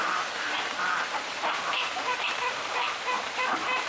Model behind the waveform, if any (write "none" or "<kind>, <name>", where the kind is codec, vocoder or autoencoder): vocoder, BigVGAN v2